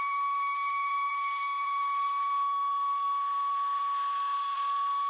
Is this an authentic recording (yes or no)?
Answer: no